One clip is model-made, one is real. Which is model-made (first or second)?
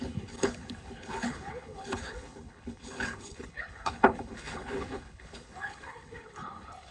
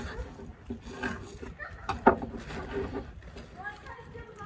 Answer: first